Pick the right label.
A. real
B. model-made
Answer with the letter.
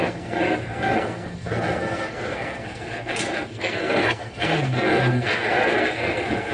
B